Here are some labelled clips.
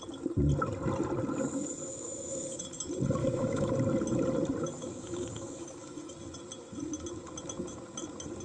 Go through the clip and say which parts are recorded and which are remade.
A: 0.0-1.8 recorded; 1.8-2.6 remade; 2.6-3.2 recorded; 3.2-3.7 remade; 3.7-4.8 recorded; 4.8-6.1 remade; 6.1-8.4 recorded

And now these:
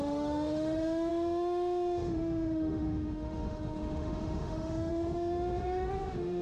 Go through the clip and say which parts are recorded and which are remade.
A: 0.0-6.4 remade